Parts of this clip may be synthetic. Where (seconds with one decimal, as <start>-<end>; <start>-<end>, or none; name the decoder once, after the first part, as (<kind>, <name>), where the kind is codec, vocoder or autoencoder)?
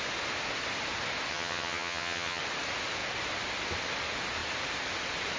1.3-2.4 (vocoder, HiFi-GAN)